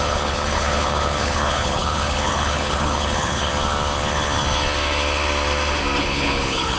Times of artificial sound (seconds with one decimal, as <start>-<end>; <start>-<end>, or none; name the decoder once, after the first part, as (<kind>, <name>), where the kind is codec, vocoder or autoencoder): 0.0-3.5 (codec, HILCodec); 6.0-6.8